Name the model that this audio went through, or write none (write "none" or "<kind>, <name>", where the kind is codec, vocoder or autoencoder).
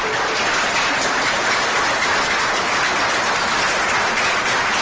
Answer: none